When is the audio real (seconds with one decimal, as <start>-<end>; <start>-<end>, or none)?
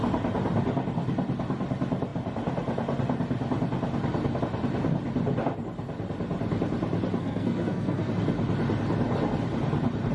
0.0-7.2; 8.1-10.1